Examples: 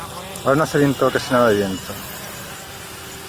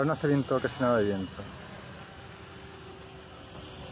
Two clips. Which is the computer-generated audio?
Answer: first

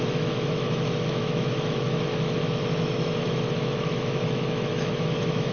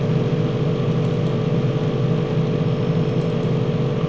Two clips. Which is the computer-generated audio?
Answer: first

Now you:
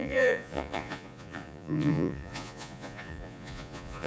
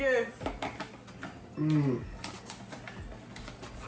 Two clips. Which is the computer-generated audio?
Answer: first